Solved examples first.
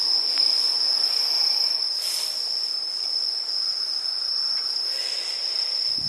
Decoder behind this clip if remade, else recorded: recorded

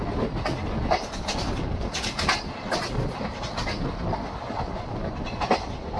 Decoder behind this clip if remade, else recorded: recorded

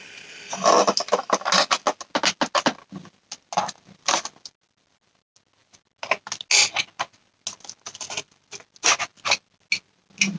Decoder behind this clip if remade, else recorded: recorded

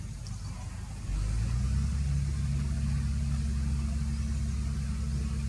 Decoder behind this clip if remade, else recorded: recorded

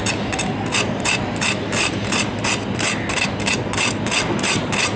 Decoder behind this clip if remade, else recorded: recorded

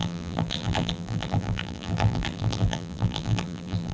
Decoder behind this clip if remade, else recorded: remade, vocoder, BigVGAN v2